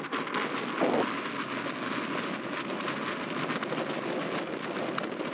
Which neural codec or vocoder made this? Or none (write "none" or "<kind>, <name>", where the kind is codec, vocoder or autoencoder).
none